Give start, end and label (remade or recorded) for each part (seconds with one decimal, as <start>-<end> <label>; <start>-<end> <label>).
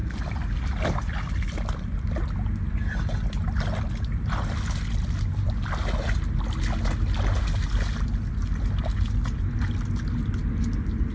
0.0-11.1 recorded